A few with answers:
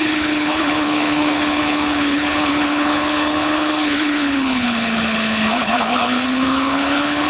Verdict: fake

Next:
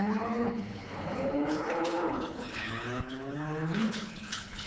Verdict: fake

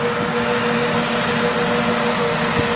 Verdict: real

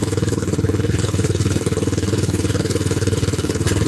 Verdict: fake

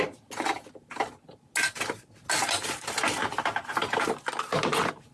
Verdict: real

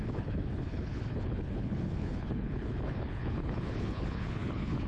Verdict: fake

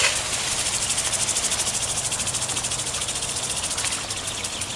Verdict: real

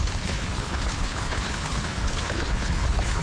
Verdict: fake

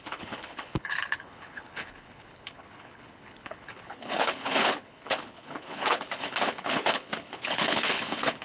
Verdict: fake